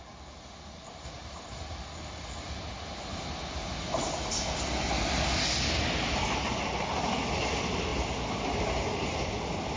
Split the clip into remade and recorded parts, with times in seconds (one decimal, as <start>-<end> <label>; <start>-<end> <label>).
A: 0.0-9.8 recorded